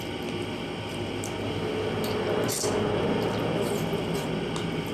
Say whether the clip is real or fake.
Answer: real